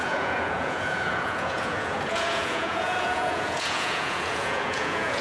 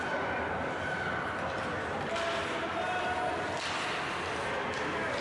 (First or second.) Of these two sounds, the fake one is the first